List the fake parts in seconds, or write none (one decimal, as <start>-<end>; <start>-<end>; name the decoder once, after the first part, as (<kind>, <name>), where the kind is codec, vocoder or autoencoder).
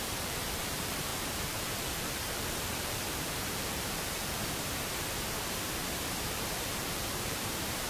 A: 0.0-4.4 (vocoder, BigVGAN v2); 6.2-7.9